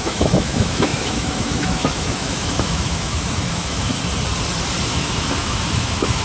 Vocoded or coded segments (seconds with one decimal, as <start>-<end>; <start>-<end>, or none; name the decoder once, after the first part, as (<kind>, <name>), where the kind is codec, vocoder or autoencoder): 0.0-3.9 (autoencoder, DAC-VAE); 4.9-6.2